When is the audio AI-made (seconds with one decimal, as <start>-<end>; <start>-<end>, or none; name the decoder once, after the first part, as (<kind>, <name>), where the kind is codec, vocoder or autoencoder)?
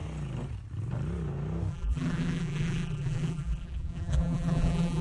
1.7-5.0 (vocoder, BigVGAN v2)